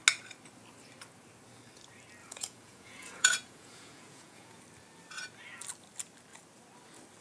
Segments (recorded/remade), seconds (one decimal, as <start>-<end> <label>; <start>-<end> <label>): 0.0-2.2 recorded; 2.2-4.6 remade; 4.6-7.2 recorded